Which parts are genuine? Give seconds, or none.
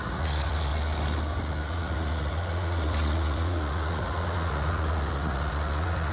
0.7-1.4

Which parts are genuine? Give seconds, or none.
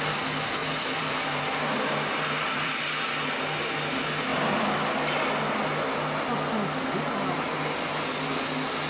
0.0-0.6; 2.8-8.9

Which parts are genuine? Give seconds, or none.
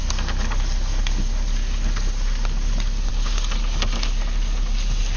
0.0-5.2